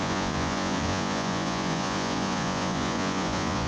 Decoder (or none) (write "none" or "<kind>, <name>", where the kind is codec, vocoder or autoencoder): vocoder, Vocos